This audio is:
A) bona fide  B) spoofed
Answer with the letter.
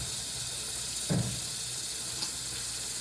A